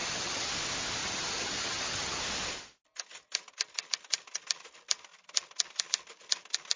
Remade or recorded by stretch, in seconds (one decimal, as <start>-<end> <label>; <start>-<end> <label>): 0.0-0.5 remade; 0.5-1.0 recorded; 1.0-2.2 remade; 2.2-6.8 recorded